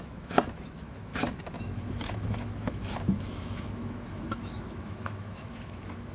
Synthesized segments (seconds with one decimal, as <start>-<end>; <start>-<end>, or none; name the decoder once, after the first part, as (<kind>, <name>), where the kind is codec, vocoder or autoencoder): 0.0-6.1 (autoencoder, DAC-VAE)